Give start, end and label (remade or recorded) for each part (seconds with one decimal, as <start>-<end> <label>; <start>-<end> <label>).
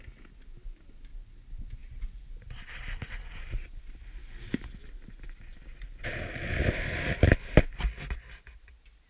0.0-1.8 recorded; 1.8-2.3 remade; 2.3-9.1 recorded